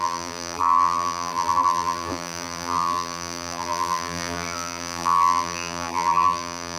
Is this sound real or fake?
fake